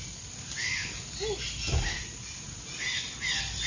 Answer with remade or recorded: recorded